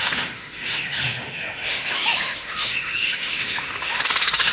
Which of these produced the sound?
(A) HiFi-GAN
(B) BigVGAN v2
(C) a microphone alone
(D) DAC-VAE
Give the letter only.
D